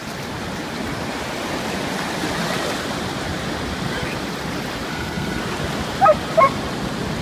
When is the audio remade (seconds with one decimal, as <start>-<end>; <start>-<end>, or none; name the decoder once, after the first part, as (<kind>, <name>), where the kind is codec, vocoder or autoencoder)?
4.9-5.4 (codec, SNAC)